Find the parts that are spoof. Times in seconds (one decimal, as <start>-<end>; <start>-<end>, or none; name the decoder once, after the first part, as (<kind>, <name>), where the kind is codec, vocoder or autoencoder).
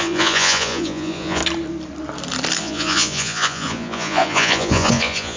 0.0-1.4 (vocoder, Vocos); 2.6-5.4